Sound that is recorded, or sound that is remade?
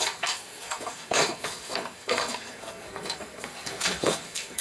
remade